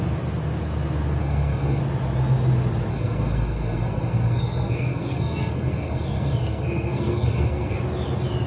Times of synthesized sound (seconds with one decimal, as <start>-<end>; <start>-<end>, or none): 1.2-1.8; 2.9-7.8